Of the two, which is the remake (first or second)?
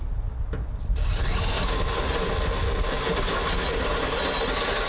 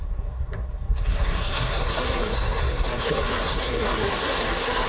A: second